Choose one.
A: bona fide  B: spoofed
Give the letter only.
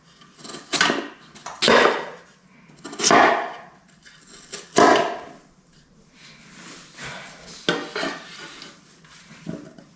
A